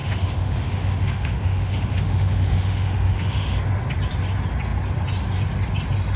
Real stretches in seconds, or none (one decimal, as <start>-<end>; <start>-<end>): 3.6-6.2